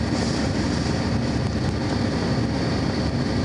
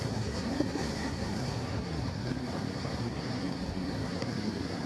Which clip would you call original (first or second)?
first